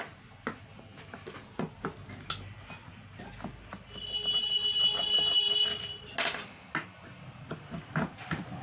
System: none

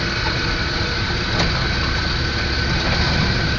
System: none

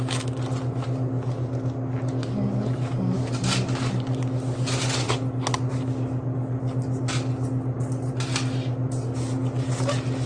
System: none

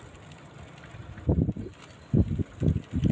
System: none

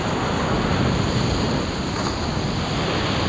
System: none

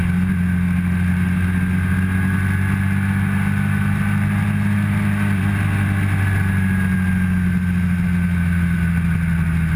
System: none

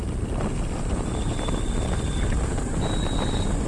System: none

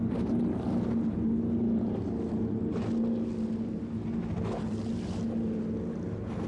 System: none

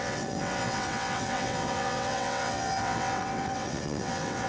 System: vocoder, WaveNeXt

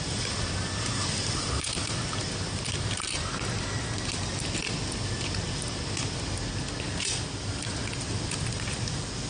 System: none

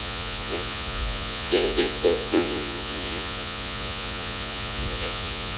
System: vocoder, Vocos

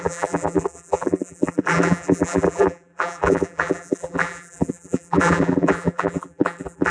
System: vocoder, BigVGAN v2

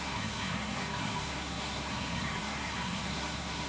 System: codec, SNAC